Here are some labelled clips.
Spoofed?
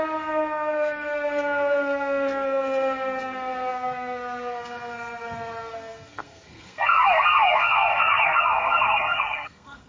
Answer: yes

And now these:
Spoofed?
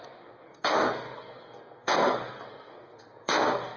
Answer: yes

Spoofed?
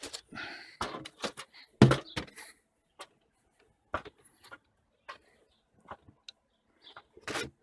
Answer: no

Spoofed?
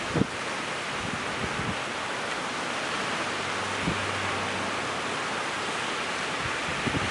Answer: no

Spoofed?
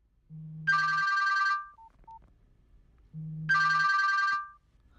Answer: no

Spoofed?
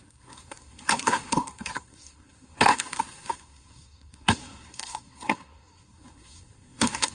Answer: yes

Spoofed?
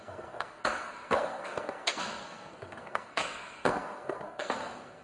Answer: yes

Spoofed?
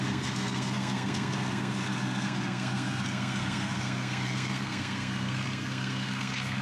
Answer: yes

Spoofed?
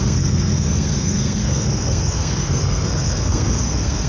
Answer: yes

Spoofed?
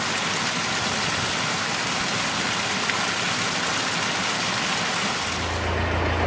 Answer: no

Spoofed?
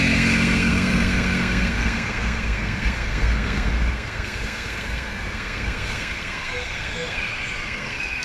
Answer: yes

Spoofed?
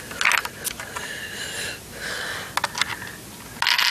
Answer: no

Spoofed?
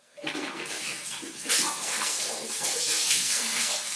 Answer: yes